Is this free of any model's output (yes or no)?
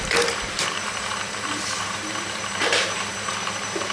no